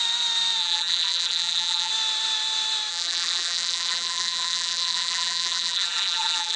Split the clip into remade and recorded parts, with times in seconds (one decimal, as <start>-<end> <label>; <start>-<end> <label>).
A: 0.0-0.6 recorded; 0.6-1.9 remade; 1.9-2.9 recorded; 2.9-6.6 remade